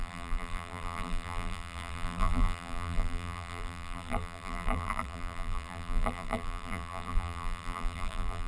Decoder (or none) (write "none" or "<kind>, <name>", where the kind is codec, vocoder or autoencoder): vocoder, BigVGAN v2